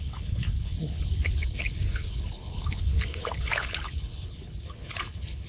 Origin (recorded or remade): remade